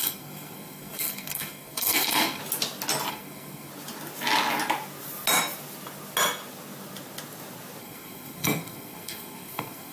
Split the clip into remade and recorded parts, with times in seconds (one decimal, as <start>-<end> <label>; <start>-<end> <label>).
0.0-2.4 remade; 2.4-3.1 recorded; 3.1-3.7 remade; 3.7-7.8 recorded; 7.8-9.9 remade